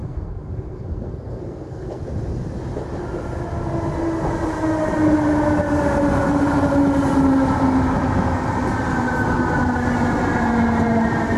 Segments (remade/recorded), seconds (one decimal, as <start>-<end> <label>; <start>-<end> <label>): 0.0-2.0 remade; 2.0-11.4 recorded